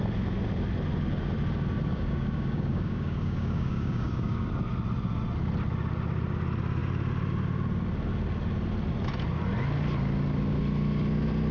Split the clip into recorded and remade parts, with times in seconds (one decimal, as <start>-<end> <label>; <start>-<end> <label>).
0.0-1.9 recorded; 1.9-4.5 remade; 4.5-11.5 recorded